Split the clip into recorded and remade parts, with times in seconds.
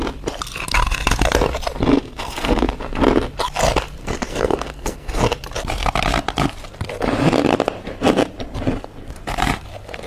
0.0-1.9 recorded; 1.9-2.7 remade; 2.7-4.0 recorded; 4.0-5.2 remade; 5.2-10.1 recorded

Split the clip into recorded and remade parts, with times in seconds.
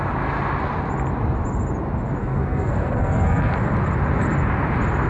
0.0-2.2 recorded; 2.2-3.5 remade; 3.5-5.1 recorded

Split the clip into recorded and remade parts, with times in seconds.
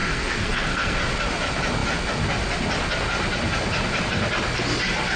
0.0-1.0 remade; 1.0-5.2 recorded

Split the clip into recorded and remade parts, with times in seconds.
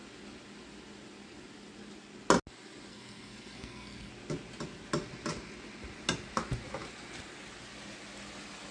0.0-2.9 recorded; 2.9-4.1 remade; 4.1-8.7 recorded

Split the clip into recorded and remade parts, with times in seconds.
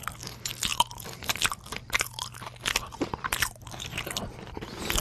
0.0-5.0 recorded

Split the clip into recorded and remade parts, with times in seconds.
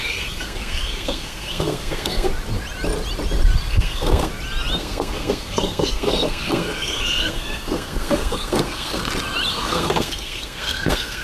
0.0-2.3 remade; 2.3-3.7 recorded; 3.7-4.3 remade; 4.3-4.8 recorded; 4.8-9.0 remade; 9.0-9.5 recorded; 9.5-11.2 remade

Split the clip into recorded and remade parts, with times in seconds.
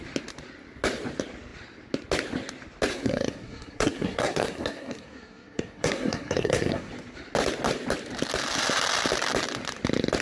0.0-2.9 recorded; 2.9-6.9 remade; 6.9-10.2 recorded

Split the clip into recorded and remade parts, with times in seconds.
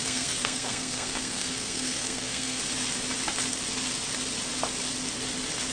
0.0-2.6 remade; 2.6-5.7 recorded